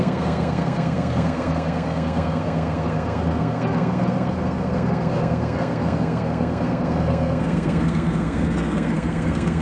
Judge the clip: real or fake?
fake